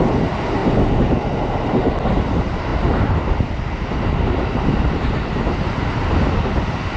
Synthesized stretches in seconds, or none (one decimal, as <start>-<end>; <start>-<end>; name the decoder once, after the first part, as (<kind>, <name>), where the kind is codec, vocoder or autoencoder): none

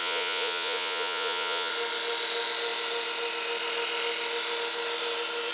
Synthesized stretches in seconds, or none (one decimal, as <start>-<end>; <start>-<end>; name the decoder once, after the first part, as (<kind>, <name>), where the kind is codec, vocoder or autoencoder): 0.0-1.7 (vocoder, Vocos)

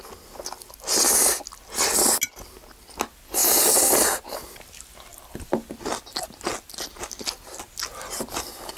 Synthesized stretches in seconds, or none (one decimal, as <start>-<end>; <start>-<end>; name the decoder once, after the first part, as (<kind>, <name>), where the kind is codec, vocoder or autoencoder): none

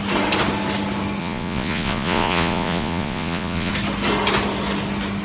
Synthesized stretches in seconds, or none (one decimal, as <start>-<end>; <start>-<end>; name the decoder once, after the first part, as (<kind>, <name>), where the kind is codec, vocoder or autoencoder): 1.2-3.7 (vocoder, Vocos)

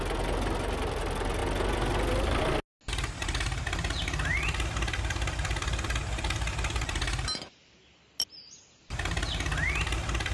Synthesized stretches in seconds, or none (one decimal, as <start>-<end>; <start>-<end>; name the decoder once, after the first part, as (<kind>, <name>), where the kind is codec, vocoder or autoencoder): none